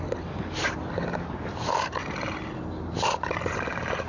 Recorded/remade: recorded